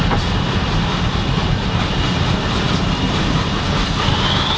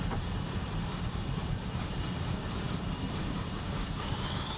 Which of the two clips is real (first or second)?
first